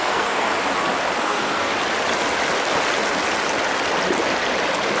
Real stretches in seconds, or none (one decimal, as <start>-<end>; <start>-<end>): 0.5-1.2; 1.7-5.0